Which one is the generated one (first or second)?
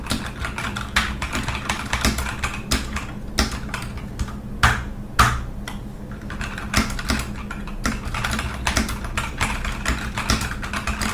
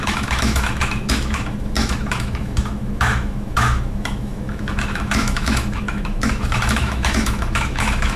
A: second